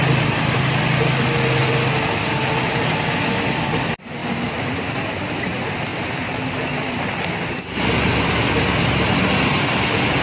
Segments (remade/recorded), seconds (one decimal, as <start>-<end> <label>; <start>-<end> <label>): 0.0-10.2 recorded